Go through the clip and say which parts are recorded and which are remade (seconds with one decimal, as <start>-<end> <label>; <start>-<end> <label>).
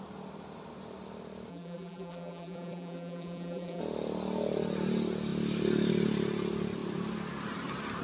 0.0-1.5 recorded; 1.5-3.8 remade; 3.8-8.0 recorded